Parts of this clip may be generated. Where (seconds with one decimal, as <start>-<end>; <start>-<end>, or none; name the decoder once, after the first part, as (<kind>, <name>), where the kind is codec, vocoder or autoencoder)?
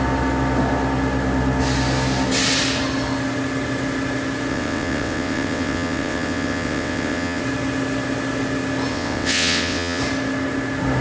4.5-7.4 (vocoder, WaveNeXt); 8.9-10.0